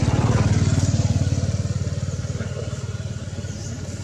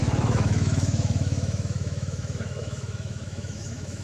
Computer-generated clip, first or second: second